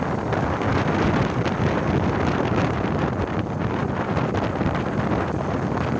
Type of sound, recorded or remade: recorded